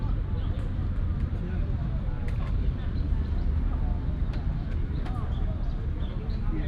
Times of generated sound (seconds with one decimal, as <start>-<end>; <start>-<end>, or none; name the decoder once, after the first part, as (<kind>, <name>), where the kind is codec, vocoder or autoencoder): none